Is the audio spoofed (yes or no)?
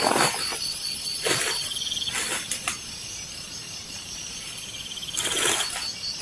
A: no